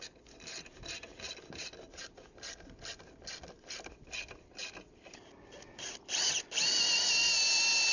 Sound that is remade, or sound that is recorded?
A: recorded